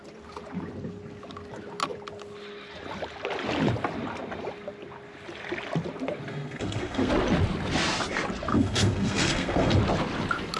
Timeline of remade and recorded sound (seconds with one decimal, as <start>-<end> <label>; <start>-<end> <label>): 0.0-6.3 recorded; 6.3-7.1 remade; 7.1-8.5 recorded; 8.5-9.8 remade; 9.8-10.6 recorded